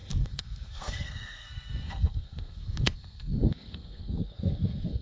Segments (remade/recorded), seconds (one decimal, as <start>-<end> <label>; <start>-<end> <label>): 0.0-5.0 remade